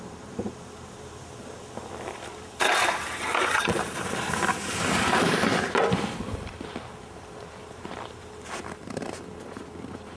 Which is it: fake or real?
fake